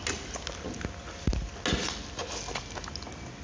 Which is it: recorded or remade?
recorded